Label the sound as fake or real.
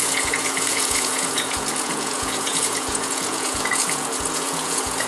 fake